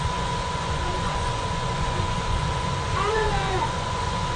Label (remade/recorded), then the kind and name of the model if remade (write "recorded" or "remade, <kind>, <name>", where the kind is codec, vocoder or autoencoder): remade, vocoder, Vocos